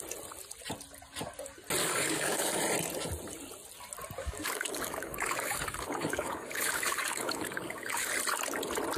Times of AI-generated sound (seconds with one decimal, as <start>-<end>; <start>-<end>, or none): 1.8-2.6; 4.2-8.1

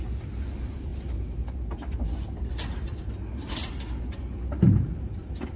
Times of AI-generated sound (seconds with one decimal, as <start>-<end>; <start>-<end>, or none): none

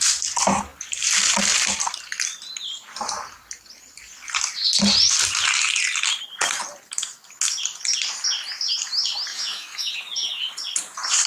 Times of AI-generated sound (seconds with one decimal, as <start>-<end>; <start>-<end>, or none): 9.3-9.9

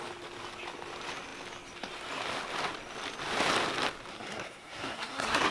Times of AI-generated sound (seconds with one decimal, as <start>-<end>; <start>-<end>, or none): 4.1-5.5

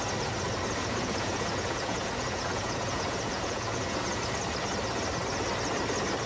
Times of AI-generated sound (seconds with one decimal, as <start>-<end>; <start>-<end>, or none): 0.8-4.2

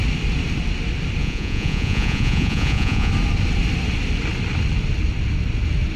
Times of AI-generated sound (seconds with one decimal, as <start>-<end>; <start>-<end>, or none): 1.2-3.1

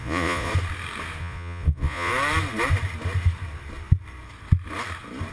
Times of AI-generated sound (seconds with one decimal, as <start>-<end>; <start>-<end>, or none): 0.0-0.5; 1.2-2.1

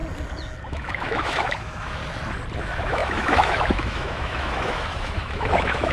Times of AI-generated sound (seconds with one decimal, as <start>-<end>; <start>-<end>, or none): 0.7-2.0; 2.6-5.9